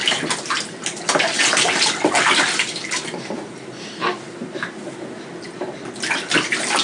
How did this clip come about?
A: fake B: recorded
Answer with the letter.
B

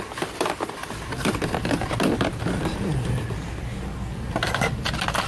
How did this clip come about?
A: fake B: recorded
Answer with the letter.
B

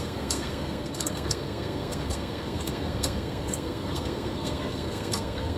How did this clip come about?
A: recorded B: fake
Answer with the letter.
B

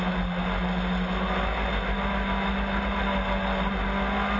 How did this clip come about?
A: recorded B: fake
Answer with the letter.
A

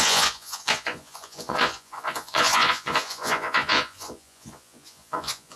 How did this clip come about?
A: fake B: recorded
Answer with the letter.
A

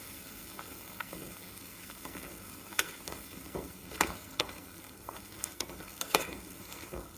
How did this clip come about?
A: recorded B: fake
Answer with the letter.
B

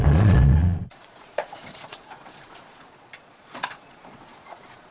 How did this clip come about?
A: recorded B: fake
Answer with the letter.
B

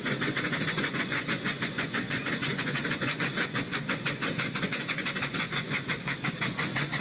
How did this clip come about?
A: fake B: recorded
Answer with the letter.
A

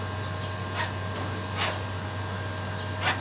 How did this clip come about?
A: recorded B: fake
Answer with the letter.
A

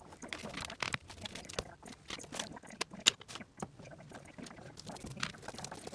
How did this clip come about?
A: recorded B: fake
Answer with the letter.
A